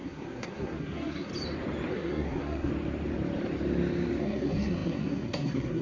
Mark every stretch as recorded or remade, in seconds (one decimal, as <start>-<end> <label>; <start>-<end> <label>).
0.0-1.3 remade; 1.3-1.9 recorded; 1.9-2.7 remade; 2.7-4.2 recorded; 4.2-5.8 remade